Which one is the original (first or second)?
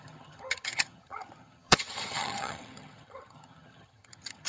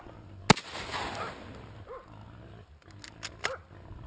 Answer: second